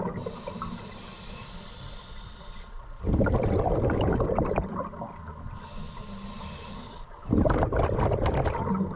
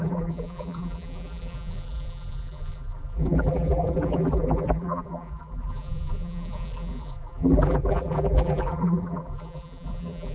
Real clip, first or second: first